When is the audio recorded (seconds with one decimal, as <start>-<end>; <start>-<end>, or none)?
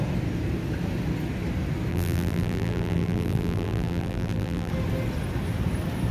0.0-1.9; 4.7-6.1